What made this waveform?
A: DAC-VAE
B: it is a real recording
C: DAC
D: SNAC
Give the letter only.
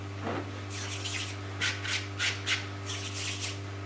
B